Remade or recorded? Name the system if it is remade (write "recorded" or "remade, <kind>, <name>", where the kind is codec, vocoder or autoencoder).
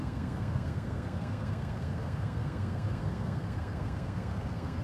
remade, codec, SNAC